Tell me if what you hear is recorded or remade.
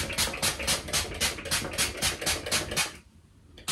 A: recorded